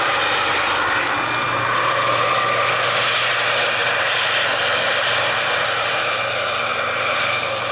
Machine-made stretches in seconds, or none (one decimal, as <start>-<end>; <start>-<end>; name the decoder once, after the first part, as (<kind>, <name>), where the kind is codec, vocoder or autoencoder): none